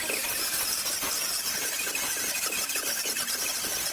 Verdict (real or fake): fake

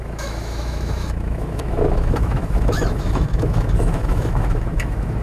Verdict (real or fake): fake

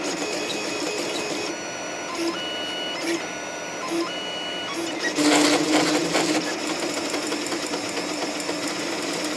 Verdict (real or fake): real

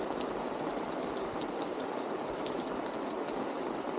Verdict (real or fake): real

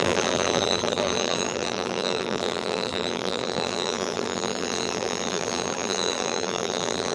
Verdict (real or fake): fake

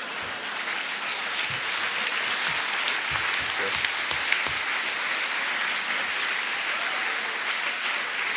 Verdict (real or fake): real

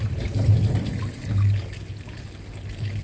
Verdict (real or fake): fake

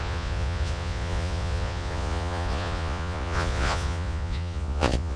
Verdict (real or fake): fake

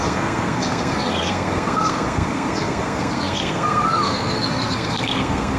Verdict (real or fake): fake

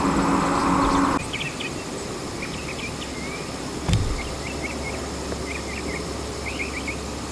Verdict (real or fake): real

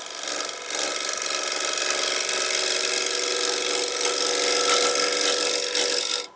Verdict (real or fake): real